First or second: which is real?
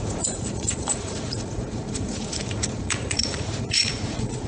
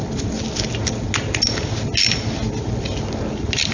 second